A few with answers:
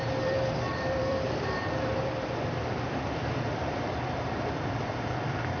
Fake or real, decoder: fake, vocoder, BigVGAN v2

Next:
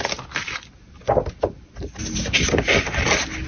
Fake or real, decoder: real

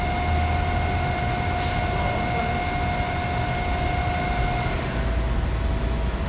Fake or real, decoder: real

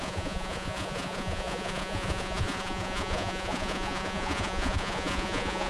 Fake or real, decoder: fake, vocoder, Vocos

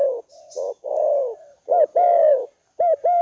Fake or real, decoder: real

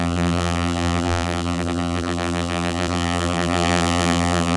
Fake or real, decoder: fake, vocoder, BigVGAN v2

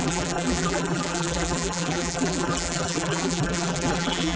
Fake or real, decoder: fake, vocoder, BigVGAN v2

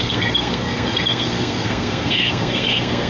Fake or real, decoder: fake, codec, SNAC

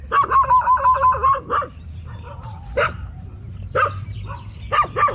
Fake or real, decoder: real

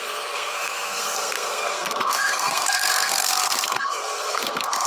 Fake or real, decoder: fake, codec, SNAC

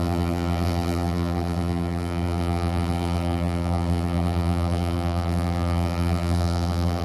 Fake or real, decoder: fake, vocoder, BigVGAN v2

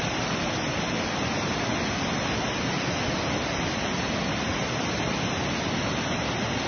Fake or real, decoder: real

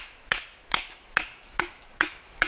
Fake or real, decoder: fake, autoencoder, DAC-VAE